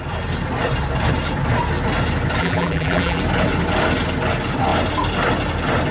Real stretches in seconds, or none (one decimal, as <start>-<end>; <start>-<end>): 0.0-2.4; 3.2-5.9